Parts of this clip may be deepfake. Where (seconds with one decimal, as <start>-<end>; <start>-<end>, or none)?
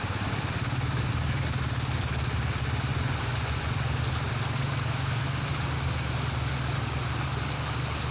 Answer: 2.9-4.0